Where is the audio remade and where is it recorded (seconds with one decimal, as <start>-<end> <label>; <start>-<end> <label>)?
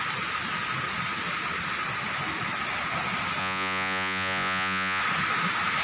0.0-3.4 recorded; 3.4-5.0 remade; 5.0-5.8 recorded